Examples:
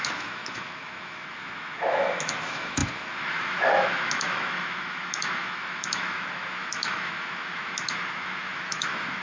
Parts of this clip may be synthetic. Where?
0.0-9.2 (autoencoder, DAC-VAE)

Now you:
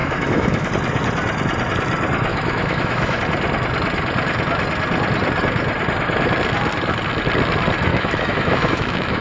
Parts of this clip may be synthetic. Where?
0.0-0.7 (autoencoder, DAC-VAE); 2.3-3.2; 7.9-9.2

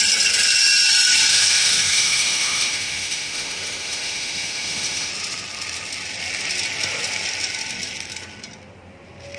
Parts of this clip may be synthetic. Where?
1.3-5.1 (autoencoder, DAC-VAE)

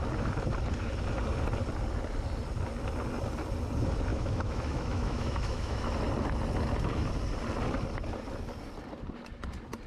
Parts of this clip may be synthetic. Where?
4.1-5.9 (autoencoder, DAC-VAE)

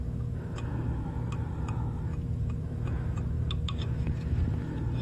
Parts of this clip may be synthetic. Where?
0.0-5.0 (autoencoder, DAC-VAE)

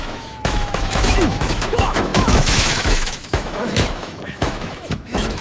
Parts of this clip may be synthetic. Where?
0.0-5.4 (autoencoder, DAC-VAE)

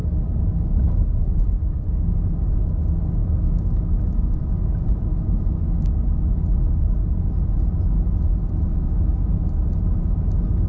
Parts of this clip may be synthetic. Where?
3.2-4.5 (autoencoder, DAC-VAE); 5.1-5.9; 8.7-9.3